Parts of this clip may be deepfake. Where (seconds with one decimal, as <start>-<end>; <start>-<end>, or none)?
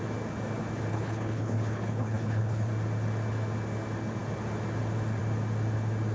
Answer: 0.9-2.7